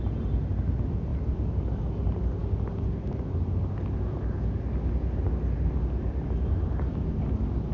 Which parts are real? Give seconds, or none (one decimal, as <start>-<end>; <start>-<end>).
0.0-7.7